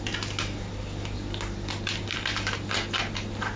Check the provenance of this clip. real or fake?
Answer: real